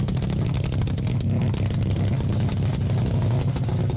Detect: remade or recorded recorded